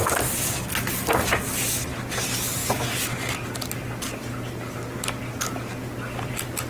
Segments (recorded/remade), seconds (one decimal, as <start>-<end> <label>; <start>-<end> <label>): 0.0-6.7 recorded